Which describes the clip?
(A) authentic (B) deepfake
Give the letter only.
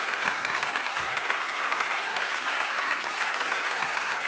B